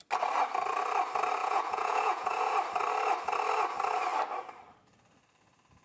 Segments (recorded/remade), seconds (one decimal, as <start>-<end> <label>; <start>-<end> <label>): 0.0-1.4 recorded; 1.4-2.5 remade; 2.5-5.8 recorded